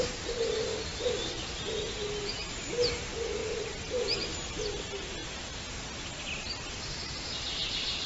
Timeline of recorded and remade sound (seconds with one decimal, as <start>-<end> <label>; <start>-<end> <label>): 0.0-0.9 recorded; 0.9-1.5 remade; 1.5-8.1 recorded